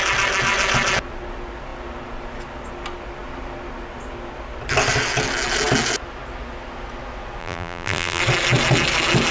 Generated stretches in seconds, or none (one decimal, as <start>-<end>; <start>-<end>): 7.4-8.2